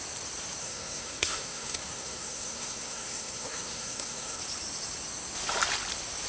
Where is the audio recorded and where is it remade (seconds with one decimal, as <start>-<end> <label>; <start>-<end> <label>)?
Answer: 0.0-0.6 recorded; 0.6-4.4 remade; 4.4-6.3 recorded